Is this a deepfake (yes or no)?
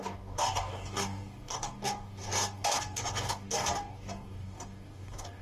yes